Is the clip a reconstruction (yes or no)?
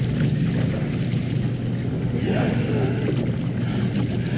no